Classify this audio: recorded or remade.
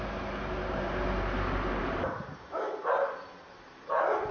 recorded